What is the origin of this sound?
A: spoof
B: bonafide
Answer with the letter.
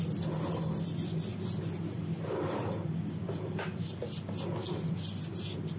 B